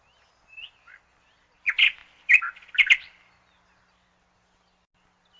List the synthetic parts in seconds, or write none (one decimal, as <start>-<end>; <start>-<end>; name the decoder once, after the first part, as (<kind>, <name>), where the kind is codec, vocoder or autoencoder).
none